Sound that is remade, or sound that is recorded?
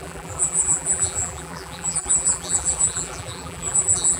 remade